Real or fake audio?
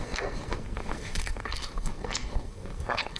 fake